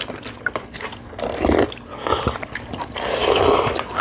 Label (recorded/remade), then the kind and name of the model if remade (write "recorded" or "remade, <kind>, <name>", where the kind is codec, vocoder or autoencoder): recorded